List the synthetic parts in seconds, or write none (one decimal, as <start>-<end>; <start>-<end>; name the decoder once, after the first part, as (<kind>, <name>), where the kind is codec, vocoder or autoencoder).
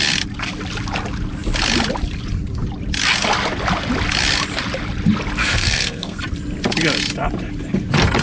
5.4-6.2 (codec, SNAC)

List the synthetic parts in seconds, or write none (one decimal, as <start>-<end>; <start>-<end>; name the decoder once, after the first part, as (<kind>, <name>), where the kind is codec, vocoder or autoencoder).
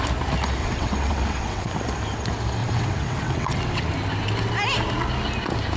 0.6-1.7 (vocoder, WaveNeXt); 2.6-3.9